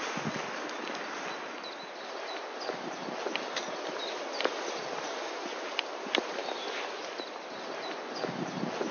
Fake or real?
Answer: real